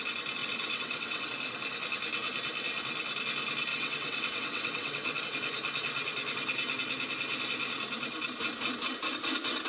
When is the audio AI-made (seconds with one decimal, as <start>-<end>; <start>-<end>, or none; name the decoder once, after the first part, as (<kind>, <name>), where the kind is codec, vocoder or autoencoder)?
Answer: 0.4-1.3 (vocoder, WaveNeXt); 3.7-5.2